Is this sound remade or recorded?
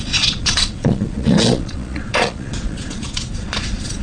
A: remade